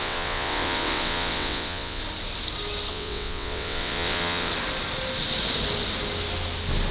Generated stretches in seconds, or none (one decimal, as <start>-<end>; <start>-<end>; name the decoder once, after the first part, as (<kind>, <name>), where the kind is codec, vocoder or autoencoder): 0.0-2.0 (vocoder, WaveNeXt); 2.9-4.5